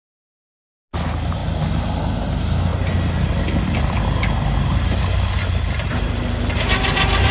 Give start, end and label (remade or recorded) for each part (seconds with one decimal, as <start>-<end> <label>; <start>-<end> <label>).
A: 0.0-7.3 recorded